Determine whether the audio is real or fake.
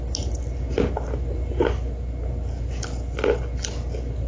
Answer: real